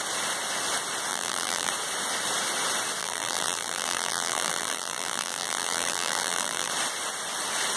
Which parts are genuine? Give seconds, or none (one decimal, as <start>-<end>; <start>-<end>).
0.0-1.1; 1.7-3.0; 6.7-7.8